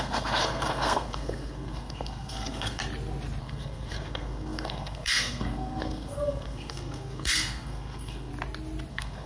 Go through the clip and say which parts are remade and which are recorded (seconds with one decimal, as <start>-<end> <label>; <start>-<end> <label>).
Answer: 0.0-2.8 remade; 2.8-3.4 recorded; 3.4-8.3 remade; 8.3-8.9 recorded; 8.9-9.3 remade